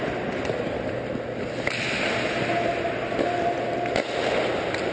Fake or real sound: real